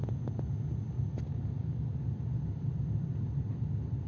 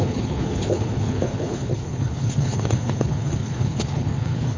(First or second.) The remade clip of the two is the second